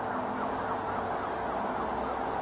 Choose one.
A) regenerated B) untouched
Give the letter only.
B